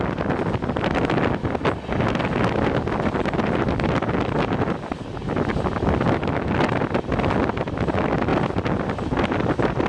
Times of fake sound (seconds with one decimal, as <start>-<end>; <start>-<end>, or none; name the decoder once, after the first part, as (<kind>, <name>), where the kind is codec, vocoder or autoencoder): none